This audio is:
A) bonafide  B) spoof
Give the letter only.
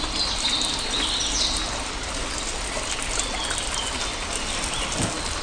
A